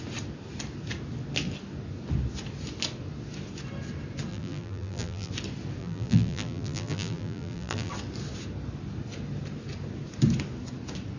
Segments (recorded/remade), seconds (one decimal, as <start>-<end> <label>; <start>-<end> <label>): 0.0-4.3 recorded; 4.3-5.3 remade; 5.3-5.8 recorded; 5.8-7.9 remade; 7.9-11.2 recorded